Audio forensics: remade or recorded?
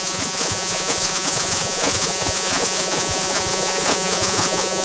remade